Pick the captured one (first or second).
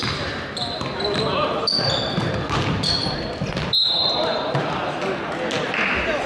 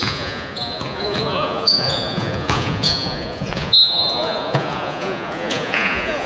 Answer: first